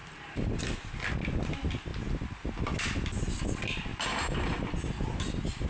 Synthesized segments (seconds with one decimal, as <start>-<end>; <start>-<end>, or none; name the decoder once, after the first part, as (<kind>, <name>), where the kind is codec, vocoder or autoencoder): 0.0-0.6 (vocoder, BigVGAN v2)